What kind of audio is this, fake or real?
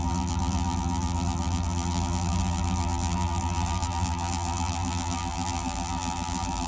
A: fake